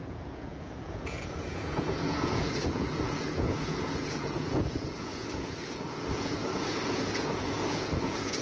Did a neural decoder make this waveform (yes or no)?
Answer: yes